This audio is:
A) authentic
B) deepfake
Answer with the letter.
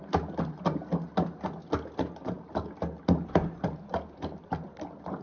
A